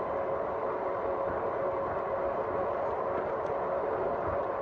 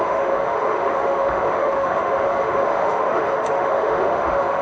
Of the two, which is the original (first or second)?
first